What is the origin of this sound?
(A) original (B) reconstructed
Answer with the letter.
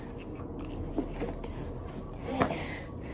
A